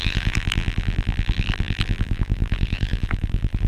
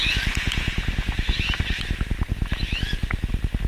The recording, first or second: second